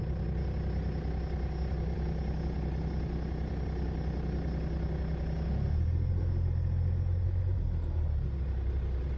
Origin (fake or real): real